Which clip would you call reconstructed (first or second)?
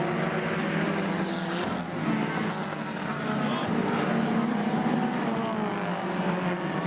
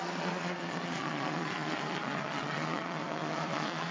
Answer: second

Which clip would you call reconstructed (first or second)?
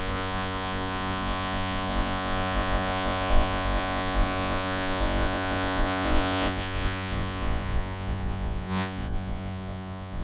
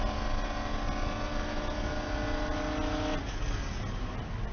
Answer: first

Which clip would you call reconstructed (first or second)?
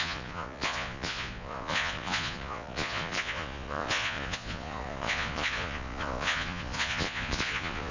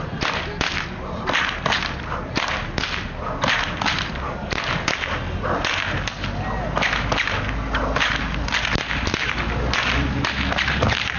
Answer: first